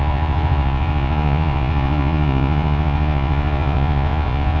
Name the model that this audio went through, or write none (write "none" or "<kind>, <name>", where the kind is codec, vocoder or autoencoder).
vocoder, Vocos